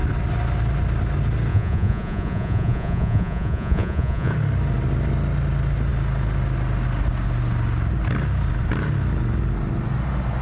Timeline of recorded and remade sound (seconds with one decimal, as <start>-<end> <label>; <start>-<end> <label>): 0.0-1.5 recorded; 1.5-4.3 remade; 4.3-10.4 recorded

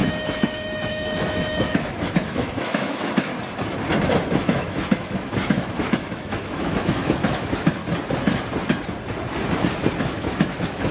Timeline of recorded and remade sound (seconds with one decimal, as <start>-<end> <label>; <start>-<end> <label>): 0.0-3.3 remade; 3.3-4.3 recorded; 4.3-7.8 remade; 7.8-10.0 recorded; 10.0-10.9 remade

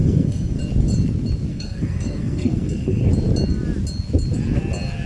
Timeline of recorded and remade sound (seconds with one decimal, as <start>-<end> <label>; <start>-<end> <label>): 0.0-0.6 remade; 0.6-1.5 recorded; 1.5-3.1 remade; 3.1-5.1 recorded

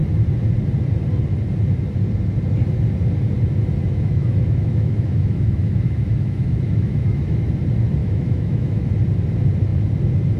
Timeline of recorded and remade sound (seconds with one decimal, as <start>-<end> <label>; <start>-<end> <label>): 0.0-3.8 recorded; 3.8-7.5 remade; 7.5-8.0 recorded; 8.0-8.9 remade; 8.9-10.4 recorded

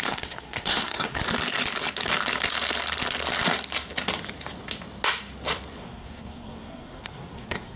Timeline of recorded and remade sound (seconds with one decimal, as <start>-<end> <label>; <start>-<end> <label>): 0.0-1.2 remade; 1.2-5.8 recorded; 5.8-7.8 remade

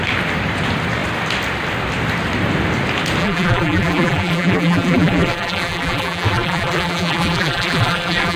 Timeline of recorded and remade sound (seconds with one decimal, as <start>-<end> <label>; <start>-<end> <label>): 0.0-3.2 recorded; 3.2-8.4 remade

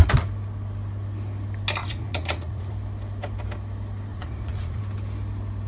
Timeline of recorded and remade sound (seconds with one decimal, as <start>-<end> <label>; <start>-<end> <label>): 0.0-1.8 recorded; 1.8-2.7 remade; 2.7-4.1 recorded; 4.1-4.8 remade; 4.8-5.7 recorded